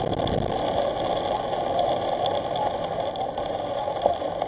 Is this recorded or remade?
recorded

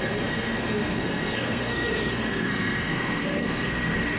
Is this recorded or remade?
remade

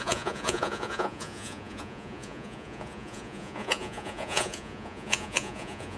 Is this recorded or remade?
remade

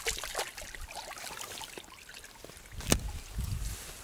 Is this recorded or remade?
recorded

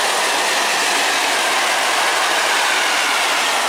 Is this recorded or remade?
recorded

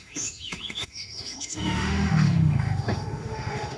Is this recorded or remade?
remade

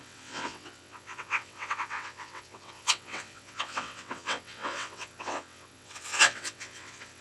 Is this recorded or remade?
remade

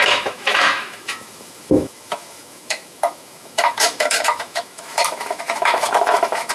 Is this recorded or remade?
remade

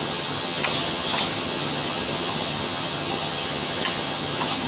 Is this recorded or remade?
remade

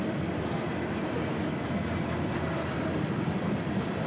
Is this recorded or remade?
recorded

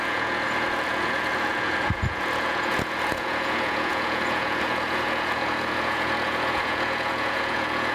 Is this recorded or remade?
remade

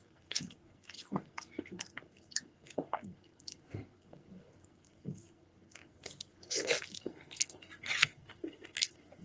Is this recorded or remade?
remade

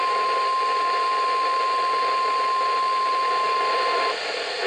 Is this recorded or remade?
recorded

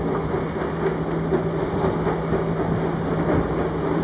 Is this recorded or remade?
recorded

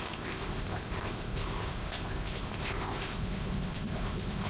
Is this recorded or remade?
remade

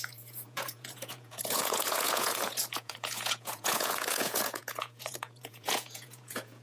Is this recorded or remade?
remade